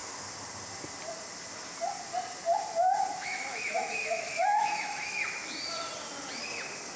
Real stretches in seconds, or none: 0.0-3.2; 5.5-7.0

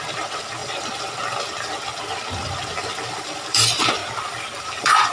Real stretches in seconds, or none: 4.0-4.6